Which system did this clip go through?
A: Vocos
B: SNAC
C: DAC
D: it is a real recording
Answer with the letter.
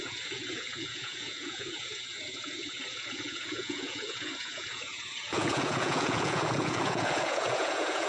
A